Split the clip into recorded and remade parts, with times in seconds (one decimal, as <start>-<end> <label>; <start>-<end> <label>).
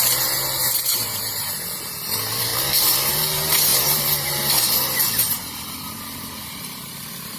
0.0-2.5 remade; 2.5-3.1 recorded; 3.1-7.4 remade